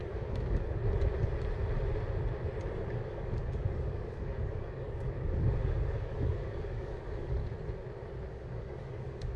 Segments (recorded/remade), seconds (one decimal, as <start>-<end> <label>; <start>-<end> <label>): 0.0-0.8 remade; 0.8-2.7 recorded; 2.7-7.4 remade; 7.4-8.3 recorded; 8.3-9.4 remade